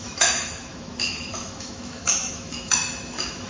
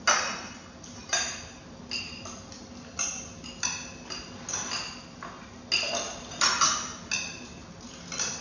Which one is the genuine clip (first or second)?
second